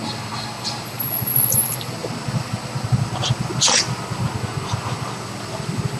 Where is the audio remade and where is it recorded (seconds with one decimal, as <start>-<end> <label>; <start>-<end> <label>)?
0.0-6.0 recorded